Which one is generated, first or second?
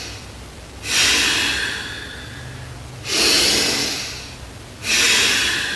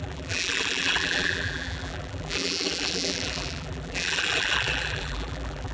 second